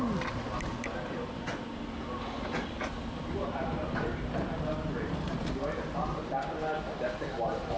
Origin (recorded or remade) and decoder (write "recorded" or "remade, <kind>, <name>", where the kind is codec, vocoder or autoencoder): recorded